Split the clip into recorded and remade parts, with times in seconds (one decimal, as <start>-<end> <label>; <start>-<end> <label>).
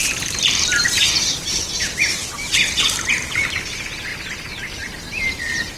0.0-4.1 remade; 4.1-5.2 recorded; 5.2-5.8 remade